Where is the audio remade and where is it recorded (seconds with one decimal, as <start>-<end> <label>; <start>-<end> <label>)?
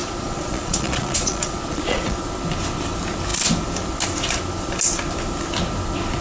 0.0-2.2 remade; 2.2-6.2 recorded